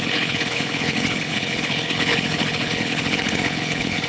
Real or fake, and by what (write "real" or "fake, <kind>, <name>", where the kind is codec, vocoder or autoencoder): fake, codec, HILCodec